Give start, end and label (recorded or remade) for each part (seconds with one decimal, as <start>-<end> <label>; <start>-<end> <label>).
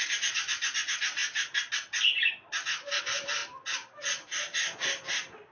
0.0-5.5 recorded